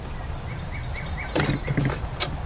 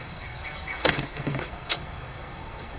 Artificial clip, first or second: second